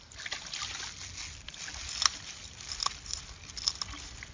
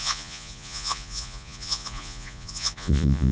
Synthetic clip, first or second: second